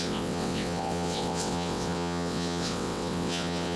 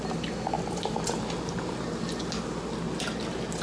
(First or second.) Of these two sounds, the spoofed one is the first